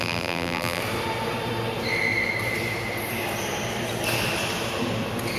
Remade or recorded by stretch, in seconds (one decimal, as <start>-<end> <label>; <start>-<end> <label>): 0.0-0.8 remade; 0.8-5.4 recorded